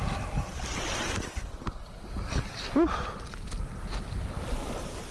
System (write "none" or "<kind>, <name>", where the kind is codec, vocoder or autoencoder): none